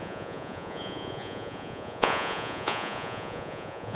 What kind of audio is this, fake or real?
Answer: fake